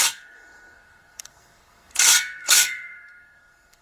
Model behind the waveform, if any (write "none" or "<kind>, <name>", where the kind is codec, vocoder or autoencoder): codec, SNAC